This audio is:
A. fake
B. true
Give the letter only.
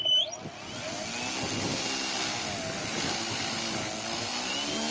B